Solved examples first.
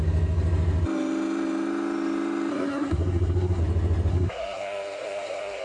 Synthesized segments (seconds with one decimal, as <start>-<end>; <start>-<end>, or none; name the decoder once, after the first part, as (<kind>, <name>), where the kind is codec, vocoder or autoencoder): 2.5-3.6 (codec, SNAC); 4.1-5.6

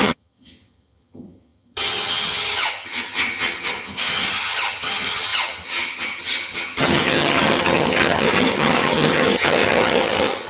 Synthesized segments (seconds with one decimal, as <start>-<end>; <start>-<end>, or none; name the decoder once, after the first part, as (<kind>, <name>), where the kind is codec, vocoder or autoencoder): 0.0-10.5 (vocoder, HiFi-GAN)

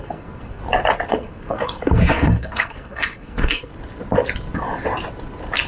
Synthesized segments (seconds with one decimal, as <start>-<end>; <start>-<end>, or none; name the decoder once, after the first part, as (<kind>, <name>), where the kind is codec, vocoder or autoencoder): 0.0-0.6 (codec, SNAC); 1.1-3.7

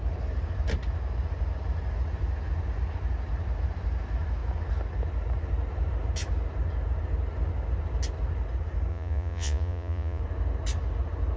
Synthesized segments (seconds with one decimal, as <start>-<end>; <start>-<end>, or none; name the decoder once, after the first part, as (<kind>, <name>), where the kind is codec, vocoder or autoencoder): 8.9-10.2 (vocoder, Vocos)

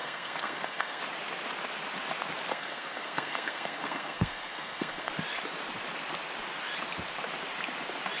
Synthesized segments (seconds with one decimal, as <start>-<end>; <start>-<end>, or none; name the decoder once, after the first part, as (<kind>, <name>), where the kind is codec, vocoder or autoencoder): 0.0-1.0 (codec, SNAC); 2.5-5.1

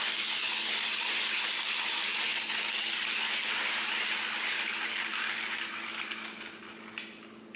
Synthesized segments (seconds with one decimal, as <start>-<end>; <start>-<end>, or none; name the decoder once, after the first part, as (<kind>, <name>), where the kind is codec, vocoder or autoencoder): none

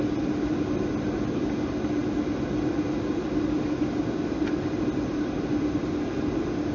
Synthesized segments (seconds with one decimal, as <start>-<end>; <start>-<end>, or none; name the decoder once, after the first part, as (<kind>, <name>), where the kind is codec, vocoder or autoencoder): none